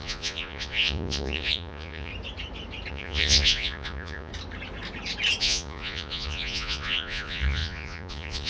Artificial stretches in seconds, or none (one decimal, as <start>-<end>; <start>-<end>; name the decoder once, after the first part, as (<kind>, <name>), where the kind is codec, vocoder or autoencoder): 0.0-2.1 (vocoder, Vocos); 2.9-4.3; 5.4-8.5